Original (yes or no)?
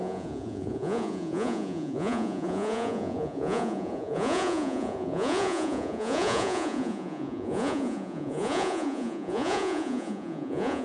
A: no